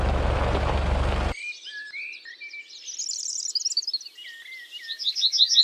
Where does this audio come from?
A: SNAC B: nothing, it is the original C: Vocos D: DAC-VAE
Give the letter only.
B